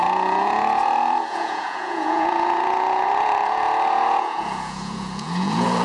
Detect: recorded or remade remade